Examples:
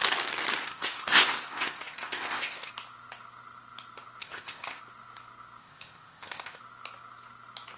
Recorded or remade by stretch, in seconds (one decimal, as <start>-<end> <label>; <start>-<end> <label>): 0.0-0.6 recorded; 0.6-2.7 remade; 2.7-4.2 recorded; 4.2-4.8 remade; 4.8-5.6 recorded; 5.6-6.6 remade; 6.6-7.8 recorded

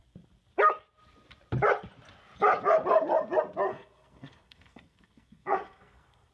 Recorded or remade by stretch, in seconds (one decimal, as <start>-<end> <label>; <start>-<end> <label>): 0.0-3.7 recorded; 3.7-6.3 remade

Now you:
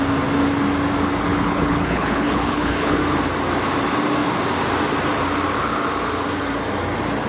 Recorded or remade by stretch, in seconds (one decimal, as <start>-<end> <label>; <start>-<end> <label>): 0.0-1.3 recorded; 1.3-3.0 remade; 3.0-7.3 recorded

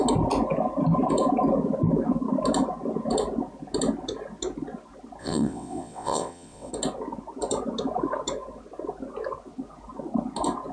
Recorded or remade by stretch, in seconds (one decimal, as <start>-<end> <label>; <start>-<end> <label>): 0.0-5.2 recorded; 5.2-6.7 remade; 6.7-10.7 recorded